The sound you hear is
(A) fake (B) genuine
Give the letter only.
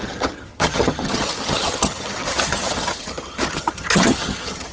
A